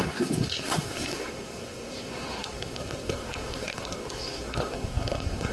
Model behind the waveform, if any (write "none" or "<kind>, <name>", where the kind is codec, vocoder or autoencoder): codec, SNAC